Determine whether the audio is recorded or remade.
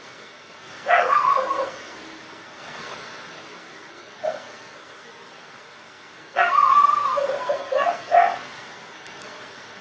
remade